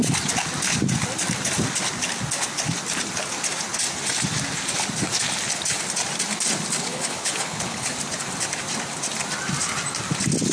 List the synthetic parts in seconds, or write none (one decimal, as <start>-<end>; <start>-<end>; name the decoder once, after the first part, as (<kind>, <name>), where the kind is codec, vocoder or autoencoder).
6.9-7.9 (codec, HILCodec)